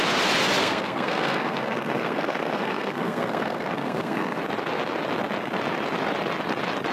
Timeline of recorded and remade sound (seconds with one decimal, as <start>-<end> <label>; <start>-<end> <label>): 0.0-0.6 recorded; 0.6-4.4 remade; 4.4-6.9 recorded